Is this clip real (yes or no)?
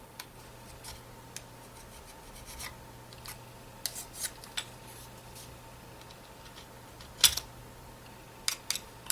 yes